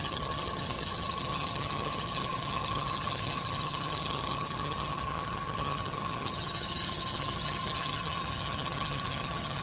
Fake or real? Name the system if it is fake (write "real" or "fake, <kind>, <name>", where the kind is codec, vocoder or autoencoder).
fake, vocoder, HiFi-GAN